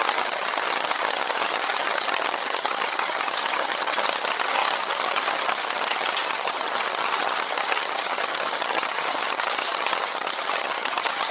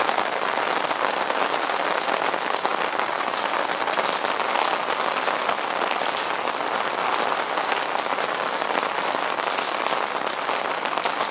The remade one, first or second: first